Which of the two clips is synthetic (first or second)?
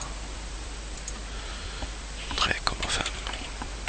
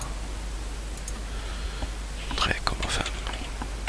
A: first